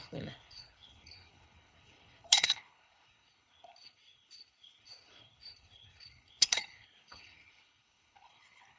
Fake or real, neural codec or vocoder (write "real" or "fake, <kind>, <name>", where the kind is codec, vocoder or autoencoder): fake, codec, HILCodec